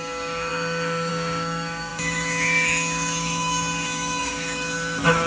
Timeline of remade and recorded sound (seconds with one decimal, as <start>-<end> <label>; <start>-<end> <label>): 0.0-5.3 remade